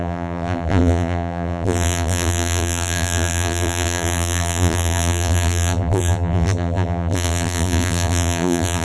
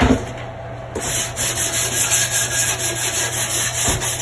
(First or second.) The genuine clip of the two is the second